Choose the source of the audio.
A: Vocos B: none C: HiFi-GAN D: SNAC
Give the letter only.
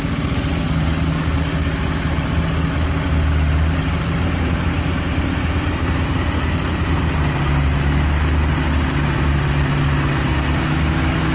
B